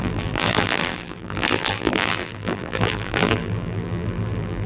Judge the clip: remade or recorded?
remade